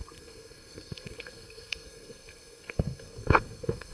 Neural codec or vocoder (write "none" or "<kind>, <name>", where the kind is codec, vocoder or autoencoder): codec, SNAC